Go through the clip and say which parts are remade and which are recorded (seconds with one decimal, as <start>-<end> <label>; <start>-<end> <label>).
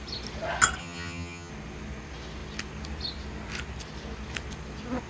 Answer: 0.0-0.8 recorded; 0.8-1.5 remade; 1.5-5.1 recorded